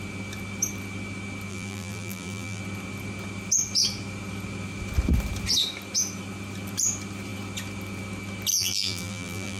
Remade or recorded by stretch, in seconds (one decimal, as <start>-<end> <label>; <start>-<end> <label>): 0.0-1.5 recorded; 1.5-2.6 remade; 2.6-8.5 recorded; 8.5-9.6 remade